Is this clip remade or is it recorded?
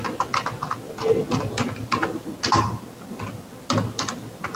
recorded